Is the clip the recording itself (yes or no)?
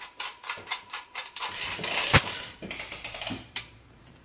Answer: no